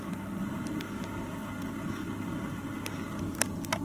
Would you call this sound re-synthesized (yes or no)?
no